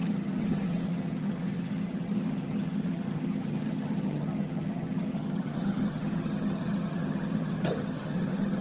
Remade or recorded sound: remade